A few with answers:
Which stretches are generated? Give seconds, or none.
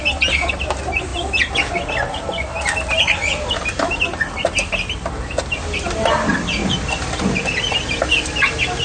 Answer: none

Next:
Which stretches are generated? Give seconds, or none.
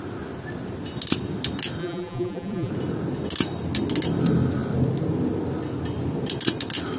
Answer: 1.8-2.7 (vocoder, BigVGAN v2)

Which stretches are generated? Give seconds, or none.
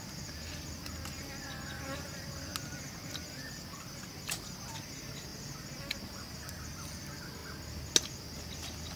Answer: none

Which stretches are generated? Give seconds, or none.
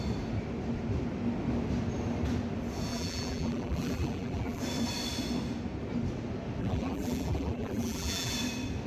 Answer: 2.9-4.6 (vocoder, BigVGAN v2); 6.6-8.3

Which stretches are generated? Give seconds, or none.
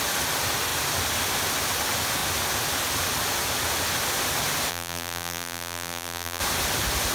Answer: 4.7-6.4 (vocoder, BigVGAN v2)